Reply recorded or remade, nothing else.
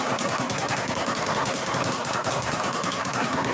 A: remade